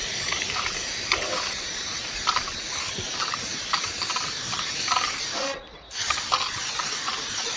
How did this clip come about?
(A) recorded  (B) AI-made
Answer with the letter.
A